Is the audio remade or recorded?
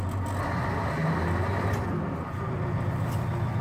recorded